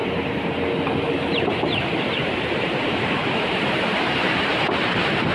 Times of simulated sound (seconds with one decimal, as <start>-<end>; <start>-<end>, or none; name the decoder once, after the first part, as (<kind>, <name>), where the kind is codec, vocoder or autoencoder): 1.3-4.5 (vocoder, BigVGAN v2)

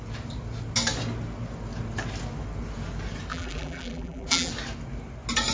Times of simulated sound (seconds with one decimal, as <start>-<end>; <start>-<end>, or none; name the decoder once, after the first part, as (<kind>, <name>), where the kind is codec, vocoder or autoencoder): 3.3-4.5 (vocoder, BigVGAN v2)

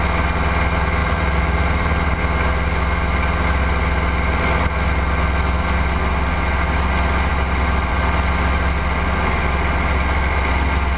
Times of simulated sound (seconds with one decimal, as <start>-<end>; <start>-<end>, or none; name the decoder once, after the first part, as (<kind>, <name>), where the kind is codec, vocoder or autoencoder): 1.0-2.2 (vocoder, BigVGAN v2)

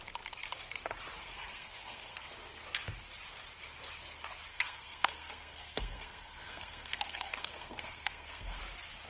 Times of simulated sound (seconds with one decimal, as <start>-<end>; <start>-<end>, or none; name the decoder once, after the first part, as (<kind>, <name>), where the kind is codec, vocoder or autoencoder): 1.2-2.3 (codec, SNAC); 4.5-8.6

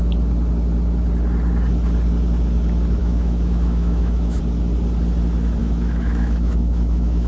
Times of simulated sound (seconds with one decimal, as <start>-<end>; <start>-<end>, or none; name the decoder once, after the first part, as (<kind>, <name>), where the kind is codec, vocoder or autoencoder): 3.0-4.4 (autoencoder, DAC-VAE); 5.6-7.3

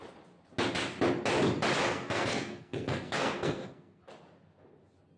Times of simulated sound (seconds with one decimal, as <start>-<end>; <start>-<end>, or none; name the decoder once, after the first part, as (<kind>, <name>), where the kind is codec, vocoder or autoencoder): 1.9-4.0 (codec, SNAC)

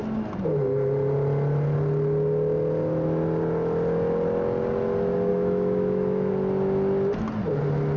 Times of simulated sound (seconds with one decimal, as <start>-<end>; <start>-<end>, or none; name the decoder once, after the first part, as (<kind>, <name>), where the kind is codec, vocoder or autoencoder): 5.3-6.3 (autoencoder, DAC-VAE)

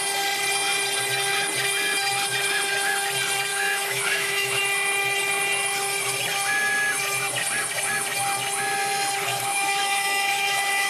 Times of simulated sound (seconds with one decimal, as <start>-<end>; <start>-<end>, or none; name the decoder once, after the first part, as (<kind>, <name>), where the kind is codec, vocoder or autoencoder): 3.5-4.6 (autoencoder, DAC-VAE); 9.3-10.9